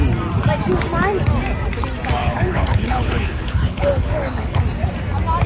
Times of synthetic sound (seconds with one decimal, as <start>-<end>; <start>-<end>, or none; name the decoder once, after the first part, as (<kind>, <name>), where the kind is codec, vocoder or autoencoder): 2.2-4.6 (codec, HILCodec)